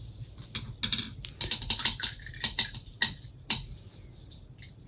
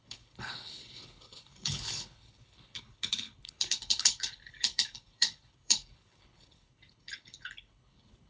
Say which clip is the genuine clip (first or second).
first